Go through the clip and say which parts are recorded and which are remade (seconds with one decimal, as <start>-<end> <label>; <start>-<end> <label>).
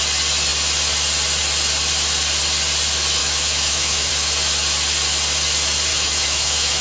0.0-3.2 recorded; 3.2-4.1 remade; 4.1-5.9 recorded; 5.9-6.8 remade